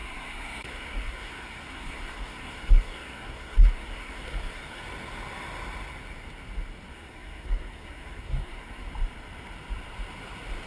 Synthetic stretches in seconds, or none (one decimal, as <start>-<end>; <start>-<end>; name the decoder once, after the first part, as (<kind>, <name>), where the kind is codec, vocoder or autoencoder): 0.0-4.8 (codec, SNAC); 6.9-8.9